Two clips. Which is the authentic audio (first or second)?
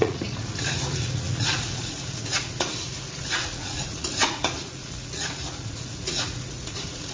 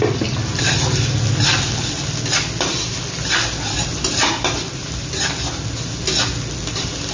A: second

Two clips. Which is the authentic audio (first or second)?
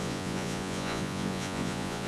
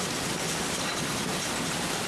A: second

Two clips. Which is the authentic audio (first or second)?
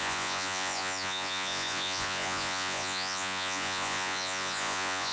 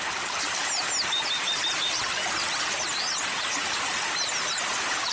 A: second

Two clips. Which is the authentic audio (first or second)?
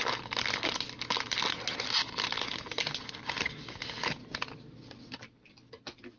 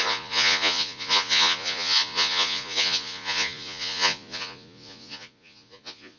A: first